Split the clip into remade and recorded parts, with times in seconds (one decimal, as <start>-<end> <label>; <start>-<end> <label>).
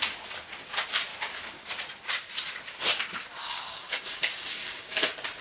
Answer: 0.0-3.4 recorded; 3.4-4.9 remade; 4.9-5.4 recorded